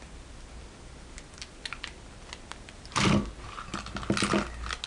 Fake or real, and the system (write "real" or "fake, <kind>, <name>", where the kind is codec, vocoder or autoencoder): real